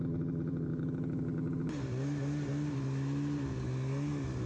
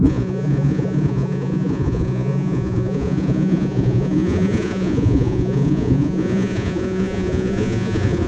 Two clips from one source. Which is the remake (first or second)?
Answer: second